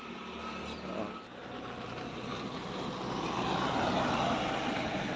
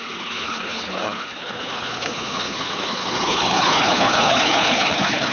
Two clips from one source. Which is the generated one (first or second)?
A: second